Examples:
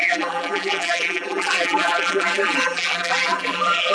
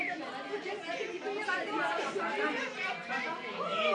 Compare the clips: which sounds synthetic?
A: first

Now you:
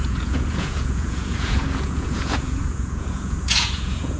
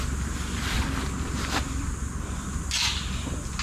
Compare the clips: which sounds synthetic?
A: first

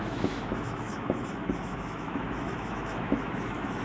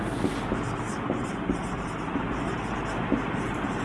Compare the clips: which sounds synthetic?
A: first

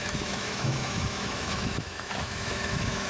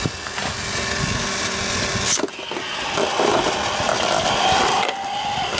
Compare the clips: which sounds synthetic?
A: first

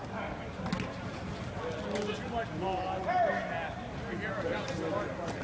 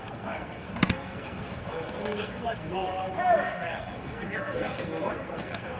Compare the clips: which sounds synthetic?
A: second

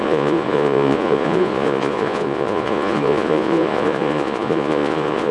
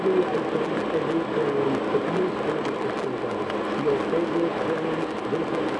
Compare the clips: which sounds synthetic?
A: first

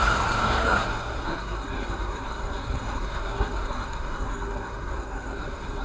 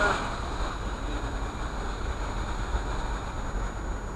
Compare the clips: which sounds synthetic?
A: first